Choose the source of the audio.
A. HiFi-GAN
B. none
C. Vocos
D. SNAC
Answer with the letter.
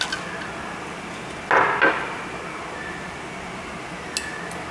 B